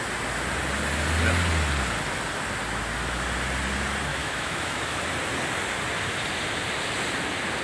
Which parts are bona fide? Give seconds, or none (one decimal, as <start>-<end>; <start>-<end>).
0.0-4.1; 5.0-7.6